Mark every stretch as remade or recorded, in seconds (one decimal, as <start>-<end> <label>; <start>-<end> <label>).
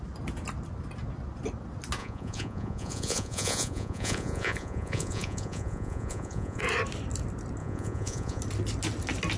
0.0-2.0 recorded; 2.0-6.6 remade; 6.6-7.6 recorded; 7.6-8.4 remade; 8.4-9.4 recorded